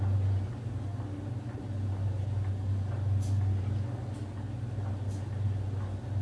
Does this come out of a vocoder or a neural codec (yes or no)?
no